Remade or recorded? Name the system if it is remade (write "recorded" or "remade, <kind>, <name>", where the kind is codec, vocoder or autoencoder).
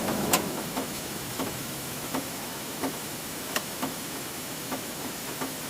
remade, autoencoder, DAC-VAE